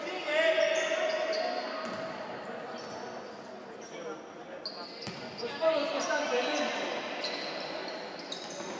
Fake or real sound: real